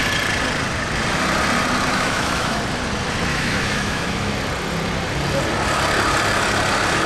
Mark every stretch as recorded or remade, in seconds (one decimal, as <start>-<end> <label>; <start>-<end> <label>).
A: 0.0-1.9 recorded; 1.9-2.6 remade; 2.6-3.3 recorded; 3.3-4.3 remade; 4.3-7.1 recorded